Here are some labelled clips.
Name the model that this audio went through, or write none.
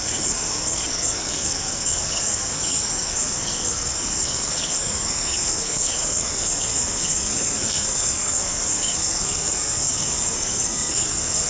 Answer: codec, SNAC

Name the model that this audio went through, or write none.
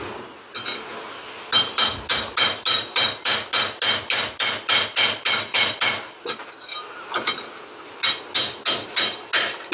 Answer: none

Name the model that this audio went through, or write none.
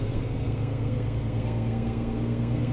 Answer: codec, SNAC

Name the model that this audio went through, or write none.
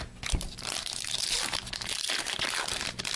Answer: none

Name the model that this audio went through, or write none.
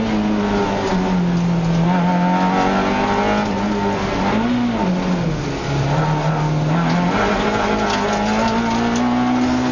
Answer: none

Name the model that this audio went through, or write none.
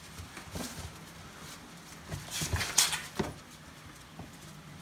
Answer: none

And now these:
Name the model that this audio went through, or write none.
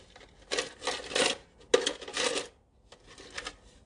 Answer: none